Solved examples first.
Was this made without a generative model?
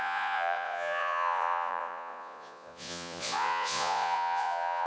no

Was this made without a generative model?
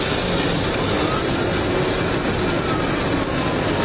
yes